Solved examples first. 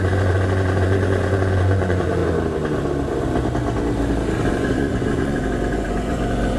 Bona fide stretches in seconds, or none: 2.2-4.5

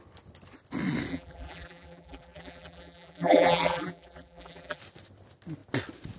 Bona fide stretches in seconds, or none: 0.0-1.1; 4.8-6.2

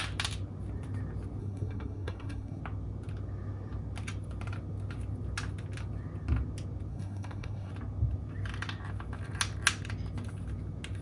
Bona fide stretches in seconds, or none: 0.0-1.4; 2.6-6.9; 7.7-11.0

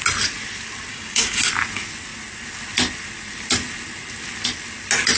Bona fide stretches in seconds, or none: 0.0-0.9; 1.5-5.2